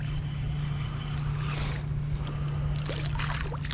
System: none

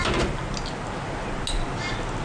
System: none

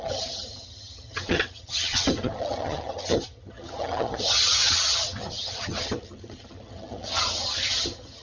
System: vocoder, HiFi-GAN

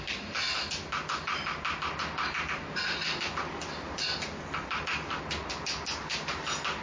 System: none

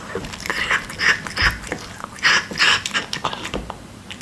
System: none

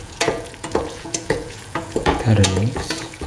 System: vocoder, Vocos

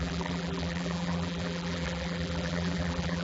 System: vocoder, BigVGAN v2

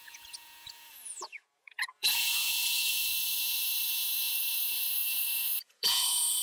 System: vocoder, Vocos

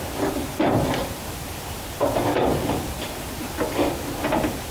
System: none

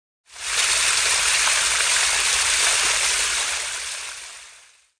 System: none